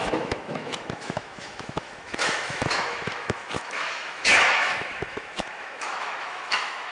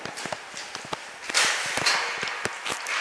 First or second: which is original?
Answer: second